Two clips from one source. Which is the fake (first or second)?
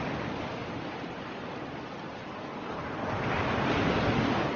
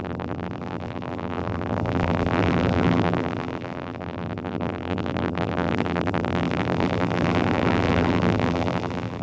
second